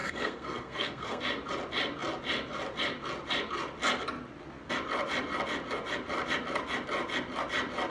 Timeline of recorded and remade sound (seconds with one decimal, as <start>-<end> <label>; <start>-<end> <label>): 0.0-1.2 remade; 1.2-7.9 recorded